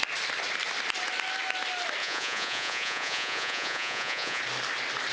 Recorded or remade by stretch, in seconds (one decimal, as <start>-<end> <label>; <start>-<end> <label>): 0.0-2.0 recorded; 2.0-4.4 remade; 4.4-5.1 recorded